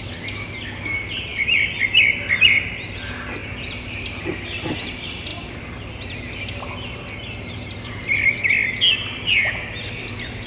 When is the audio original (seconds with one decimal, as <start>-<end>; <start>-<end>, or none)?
1.3-2.4; 3.4-4.0; 5.3-7.5; 8.6-10.5